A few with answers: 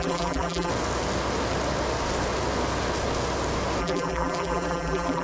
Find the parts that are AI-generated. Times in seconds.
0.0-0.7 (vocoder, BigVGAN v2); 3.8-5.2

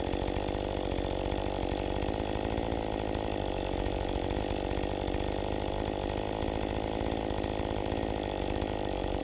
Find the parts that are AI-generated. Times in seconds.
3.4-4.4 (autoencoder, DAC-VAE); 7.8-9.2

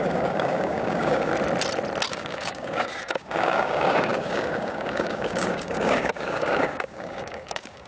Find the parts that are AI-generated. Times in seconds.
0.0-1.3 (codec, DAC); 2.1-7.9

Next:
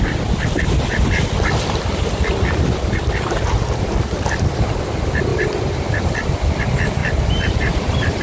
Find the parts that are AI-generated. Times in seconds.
5.3-6.6 (vocoder, BigVGAN v2); 7.0-8.2